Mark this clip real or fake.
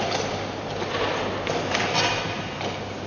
real